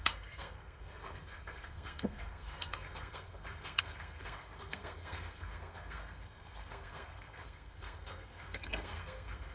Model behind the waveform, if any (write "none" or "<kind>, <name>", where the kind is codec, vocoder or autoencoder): codec, SNAC